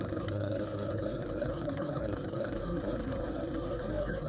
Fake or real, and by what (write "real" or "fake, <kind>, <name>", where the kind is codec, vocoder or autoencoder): fake, codec, SNAC